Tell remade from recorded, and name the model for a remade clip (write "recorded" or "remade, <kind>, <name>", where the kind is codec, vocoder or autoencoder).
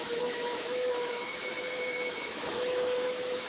remade, autoencoder, DAC-VAE